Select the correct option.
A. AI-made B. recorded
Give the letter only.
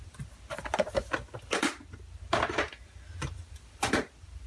A